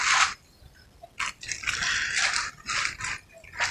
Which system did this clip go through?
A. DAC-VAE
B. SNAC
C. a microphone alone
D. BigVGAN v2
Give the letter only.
C